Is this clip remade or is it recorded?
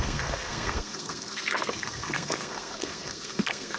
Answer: remade